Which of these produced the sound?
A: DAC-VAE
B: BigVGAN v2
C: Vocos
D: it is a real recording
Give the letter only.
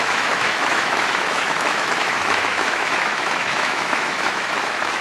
A